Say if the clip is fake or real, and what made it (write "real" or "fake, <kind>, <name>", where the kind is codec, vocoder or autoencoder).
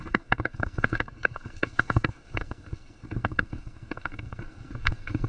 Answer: fake, codec, SNAC